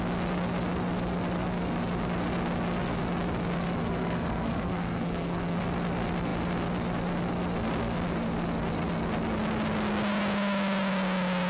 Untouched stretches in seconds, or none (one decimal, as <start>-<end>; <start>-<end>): 0.0-3.8; 5.6-11.5